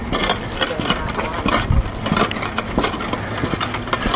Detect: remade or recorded recorded